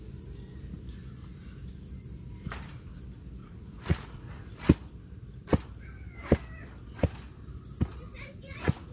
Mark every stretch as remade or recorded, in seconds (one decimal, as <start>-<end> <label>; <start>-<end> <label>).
0.0-3.4 recorded; 3.4-4.2 remade; 4.2-7.9 recorded; 7.9-8.9 remade